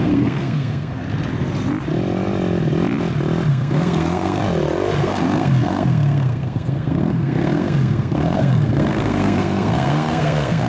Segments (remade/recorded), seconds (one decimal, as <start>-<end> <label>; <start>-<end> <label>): 0.0-1.0 remade; 1.0-3.5 recorded; 3.5-4.4 remade; 4.4-5.0 recorded; 5.0-10.7 remade